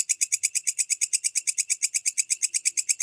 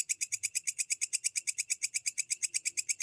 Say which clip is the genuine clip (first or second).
first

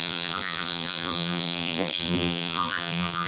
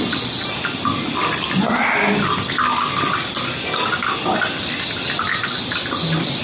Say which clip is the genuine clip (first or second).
second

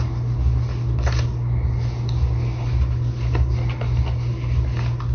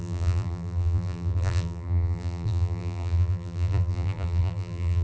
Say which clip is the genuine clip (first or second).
first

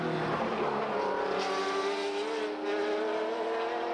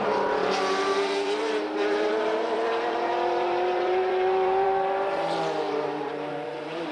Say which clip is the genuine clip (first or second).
first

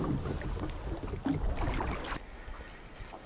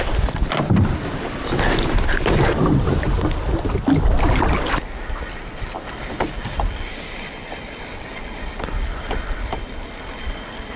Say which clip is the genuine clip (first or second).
first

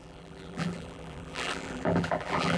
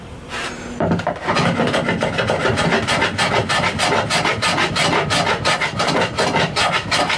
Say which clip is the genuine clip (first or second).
second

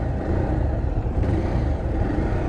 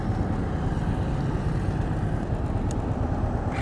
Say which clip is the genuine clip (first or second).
second